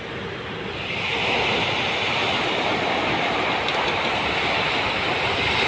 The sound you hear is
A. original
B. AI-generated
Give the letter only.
A